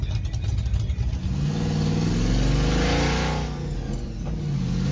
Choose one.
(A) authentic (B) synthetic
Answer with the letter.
A